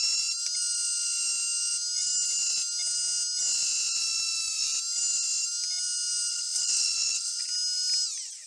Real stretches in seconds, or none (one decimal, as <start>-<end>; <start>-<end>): 0.0-6.3; 7.5-8.5